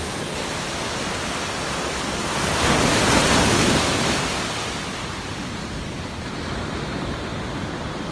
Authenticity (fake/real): real